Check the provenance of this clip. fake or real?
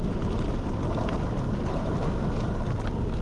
real